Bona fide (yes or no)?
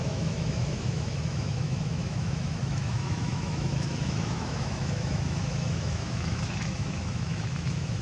no